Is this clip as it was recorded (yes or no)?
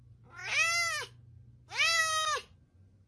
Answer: yes